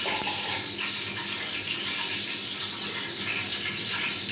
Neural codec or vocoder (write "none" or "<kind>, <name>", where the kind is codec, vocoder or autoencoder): none